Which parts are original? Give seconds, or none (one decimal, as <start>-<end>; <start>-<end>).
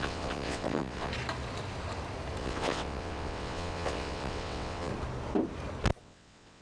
1.1-2.4; 4.9-6.0